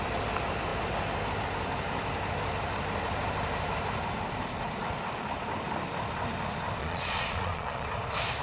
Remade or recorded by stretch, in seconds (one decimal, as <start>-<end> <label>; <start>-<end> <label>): 0.0-6.8 recorded; 6.8-7.9 remade; 7.9-8.4 recorded